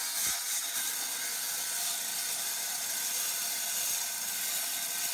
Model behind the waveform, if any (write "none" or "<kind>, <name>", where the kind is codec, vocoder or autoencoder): none